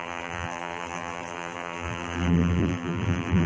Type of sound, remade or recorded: remade